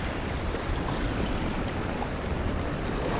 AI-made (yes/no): no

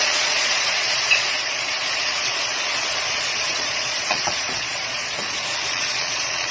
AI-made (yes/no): yes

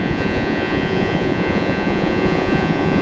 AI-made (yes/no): yes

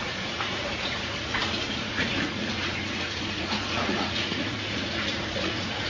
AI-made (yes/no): yes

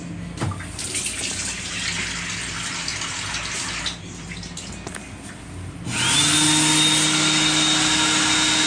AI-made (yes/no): no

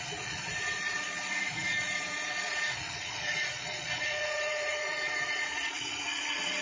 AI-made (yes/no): yes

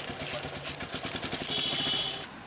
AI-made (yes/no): no